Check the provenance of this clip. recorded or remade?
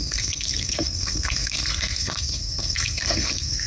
remade